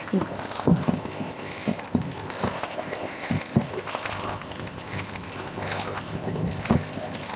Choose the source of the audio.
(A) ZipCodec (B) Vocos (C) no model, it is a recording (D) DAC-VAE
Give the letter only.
A